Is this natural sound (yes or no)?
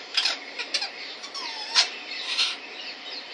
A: no